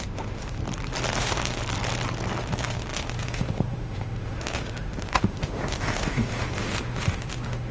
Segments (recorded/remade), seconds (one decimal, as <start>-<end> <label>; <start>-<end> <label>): 0.0-0.6 remade; 0.6-1.2 recorded; 1.2-1.6 remade; 1.6-2.4 recorded; 2.4-7.7 remade